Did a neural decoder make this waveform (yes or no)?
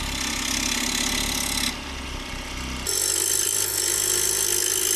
no